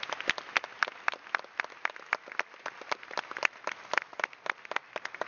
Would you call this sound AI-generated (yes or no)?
no